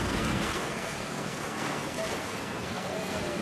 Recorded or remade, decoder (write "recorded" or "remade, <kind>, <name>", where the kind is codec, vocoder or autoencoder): remade, codec, SNAC